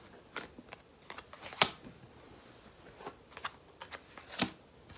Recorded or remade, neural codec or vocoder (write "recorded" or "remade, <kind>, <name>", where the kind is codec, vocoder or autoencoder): recorded